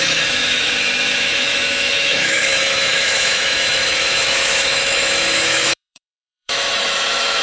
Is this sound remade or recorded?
remade